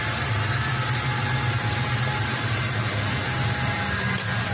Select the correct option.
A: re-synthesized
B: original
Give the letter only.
B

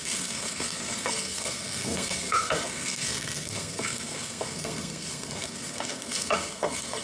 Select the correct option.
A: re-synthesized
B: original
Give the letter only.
A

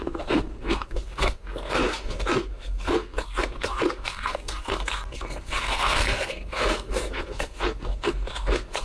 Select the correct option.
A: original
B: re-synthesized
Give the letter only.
B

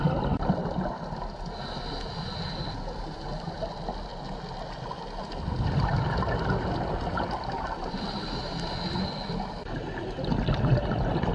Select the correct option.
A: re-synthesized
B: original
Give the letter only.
B